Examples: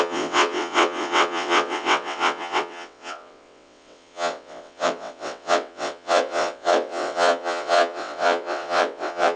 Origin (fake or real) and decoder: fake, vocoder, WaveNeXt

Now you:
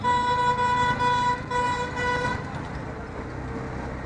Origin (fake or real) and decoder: real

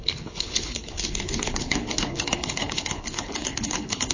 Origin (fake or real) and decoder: fake, codec, HILCodec